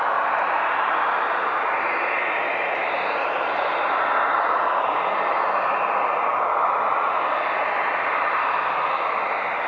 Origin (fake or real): real